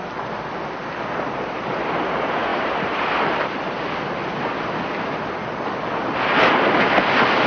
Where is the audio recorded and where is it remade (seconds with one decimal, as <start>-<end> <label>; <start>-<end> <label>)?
0.0-2.5 recorded; 2.5-3.5 remade; 3.5-7.5 recorded